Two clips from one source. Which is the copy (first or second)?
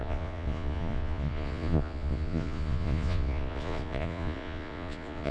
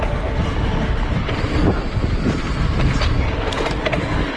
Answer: first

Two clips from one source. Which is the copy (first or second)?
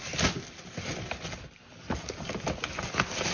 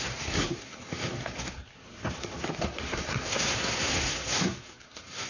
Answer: second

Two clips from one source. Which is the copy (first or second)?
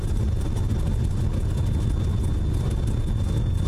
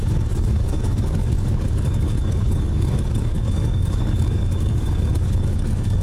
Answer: second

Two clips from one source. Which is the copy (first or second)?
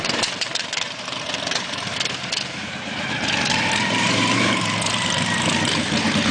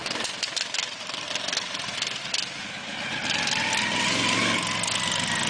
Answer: first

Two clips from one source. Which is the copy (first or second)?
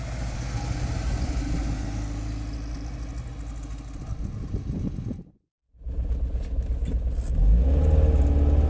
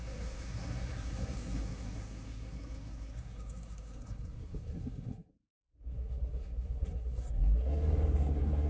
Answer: second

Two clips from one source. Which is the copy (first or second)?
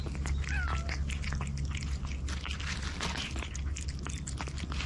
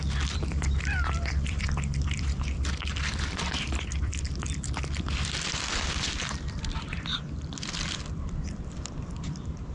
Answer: second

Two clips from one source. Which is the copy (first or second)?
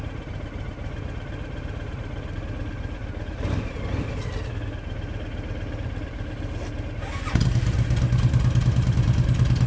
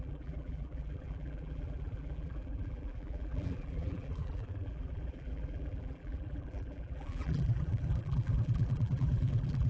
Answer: second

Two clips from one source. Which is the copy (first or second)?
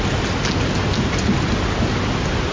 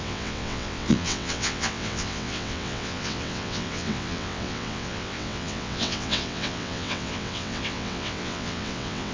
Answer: second